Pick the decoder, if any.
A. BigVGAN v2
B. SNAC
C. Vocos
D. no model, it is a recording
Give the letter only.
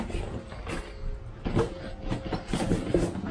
D